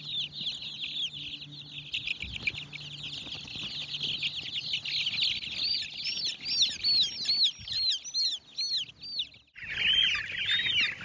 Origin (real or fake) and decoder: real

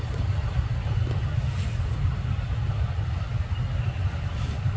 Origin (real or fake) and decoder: real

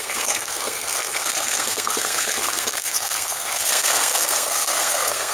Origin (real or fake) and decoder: fake, codec, SNAC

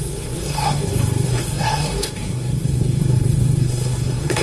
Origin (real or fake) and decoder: fake, codec, SNAC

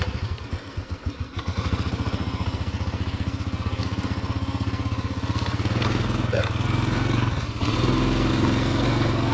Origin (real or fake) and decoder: fake, codec, SNAC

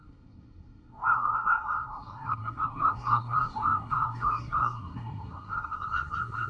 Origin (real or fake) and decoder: fake, codec, SNAC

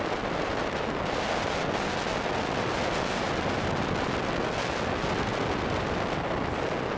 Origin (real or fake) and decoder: real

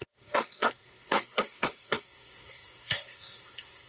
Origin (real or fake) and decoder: fake, codec, SNAC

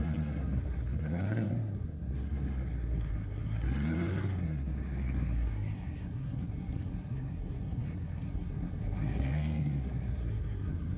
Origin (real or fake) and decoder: fake, codec, SNAC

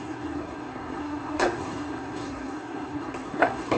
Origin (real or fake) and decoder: fake, codec, SNAC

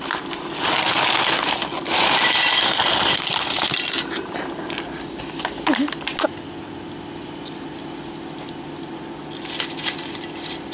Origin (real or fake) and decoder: real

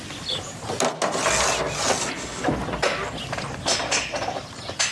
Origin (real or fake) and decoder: real